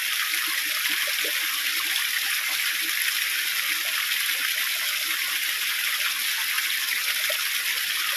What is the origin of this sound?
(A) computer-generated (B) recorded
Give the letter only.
B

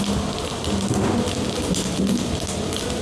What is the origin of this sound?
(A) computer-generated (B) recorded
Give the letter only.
B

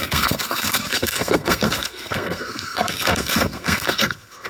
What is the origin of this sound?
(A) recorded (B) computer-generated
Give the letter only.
B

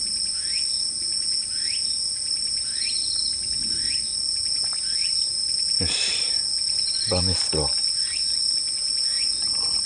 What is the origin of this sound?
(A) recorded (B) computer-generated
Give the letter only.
A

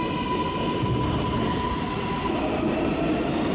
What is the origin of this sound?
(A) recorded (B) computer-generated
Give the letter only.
A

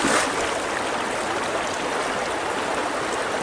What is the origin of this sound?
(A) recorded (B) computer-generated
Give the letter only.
A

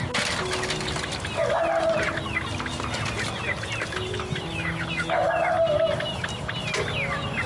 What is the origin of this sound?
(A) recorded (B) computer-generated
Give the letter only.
A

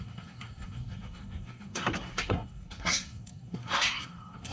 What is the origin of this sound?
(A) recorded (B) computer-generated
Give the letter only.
B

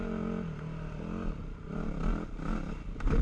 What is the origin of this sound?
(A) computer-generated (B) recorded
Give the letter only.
B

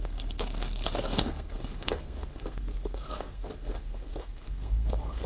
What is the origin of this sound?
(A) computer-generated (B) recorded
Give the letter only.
A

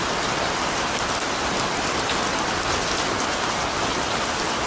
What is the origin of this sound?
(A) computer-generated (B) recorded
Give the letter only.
B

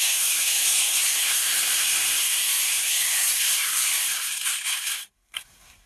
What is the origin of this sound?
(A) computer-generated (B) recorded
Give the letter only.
A